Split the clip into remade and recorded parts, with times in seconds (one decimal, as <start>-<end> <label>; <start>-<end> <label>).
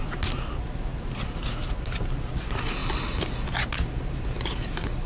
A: 0.0-5.1 recorded